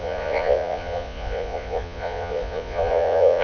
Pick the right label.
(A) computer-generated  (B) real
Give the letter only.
A